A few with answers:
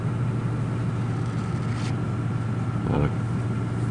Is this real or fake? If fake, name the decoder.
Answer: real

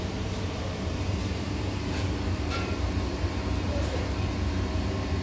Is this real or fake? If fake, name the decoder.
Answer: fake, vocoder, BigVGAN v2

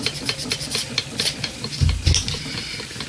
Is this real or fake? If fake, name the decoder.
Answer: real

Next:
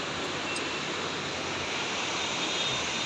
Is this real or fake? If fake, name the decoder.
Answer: real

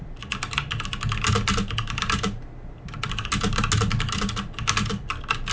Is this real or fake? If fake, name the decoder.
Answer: real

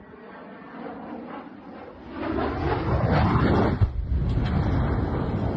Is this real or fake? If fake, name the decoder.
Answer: real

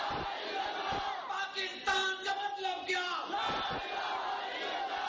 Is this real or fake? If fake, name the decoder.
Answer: real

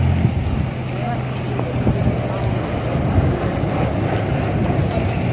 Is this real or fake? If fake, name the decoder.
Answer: real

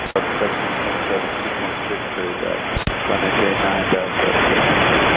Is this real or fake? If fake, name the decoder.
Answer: fake, vocoder, BigVGAN v2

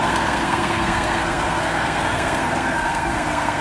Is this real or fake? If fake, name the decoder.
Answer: fake, codec, SNAC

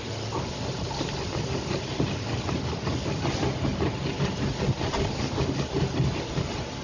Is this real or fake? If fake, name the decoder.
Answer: real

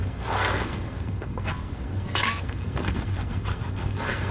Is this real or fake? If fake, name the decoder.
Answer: fake, codec, SNAC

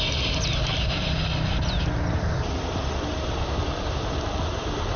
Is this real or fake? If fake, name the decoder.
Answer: real